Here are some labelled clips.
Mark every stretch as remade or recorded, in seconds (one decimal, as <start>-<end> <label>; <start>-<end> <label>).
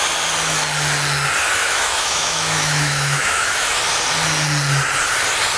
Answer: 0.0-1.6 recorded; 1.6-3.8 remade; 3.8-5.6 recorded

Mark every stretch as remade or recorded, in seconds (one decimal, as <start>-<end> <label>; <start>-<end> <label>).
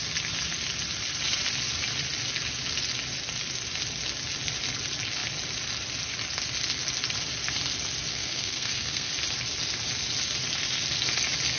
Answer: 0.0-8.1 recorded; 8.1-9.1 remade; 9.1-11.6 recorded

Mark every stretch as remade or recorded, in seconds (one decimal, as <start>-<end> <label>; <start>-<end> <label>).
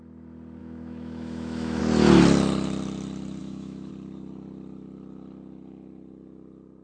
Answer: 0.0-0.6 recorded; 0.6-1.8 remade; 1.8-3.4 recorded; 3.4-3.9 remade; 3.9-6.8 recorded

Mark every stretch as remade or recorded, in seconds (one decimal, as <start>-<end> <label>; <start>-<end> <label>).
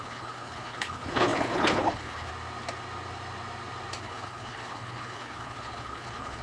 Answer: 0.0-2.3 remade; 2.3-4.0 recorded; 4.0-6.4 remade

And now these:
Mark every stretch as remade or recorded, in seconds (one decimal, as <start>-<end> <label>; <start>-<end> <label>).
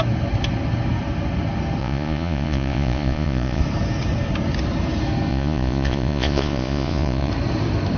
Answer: 0.0-1.8 recorded; 1.8-3.6 remade; 3.6-5.3 recorded; 5.3-7.3 remade; 7.3-8.0 recorded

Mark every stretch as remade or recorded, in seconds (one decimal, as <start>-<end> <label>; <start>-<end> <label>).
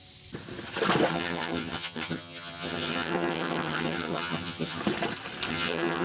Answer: 0.0-1.1 recorded; 1.1-4.8 remade; 4.8-5.5 recorded; 5.5-6.0 remade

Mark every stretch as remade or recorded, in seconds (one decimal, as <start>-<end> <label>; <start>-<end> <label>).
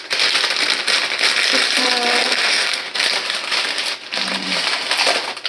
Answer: 0.0-2.2 recorded; 2.2-2.8 remade; 2.8-5.5 recorded